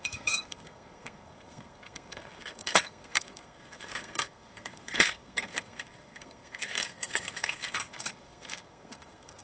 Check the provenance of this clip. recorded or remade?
remade